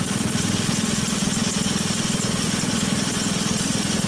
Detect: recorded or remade recorded